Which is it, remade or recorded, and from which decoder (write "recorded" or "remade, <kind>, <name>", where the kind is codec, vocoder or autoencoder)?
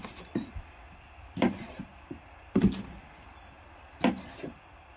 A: recorded